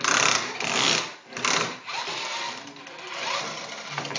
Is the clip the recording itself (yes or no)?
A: yes